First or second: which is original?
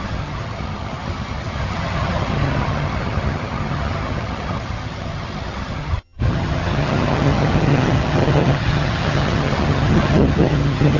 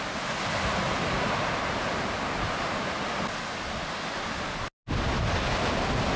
second